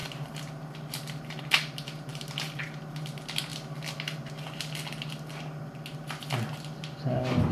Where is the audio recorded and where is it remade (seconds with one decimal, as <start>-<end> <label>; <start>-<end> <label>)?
0.0-7.5 recorded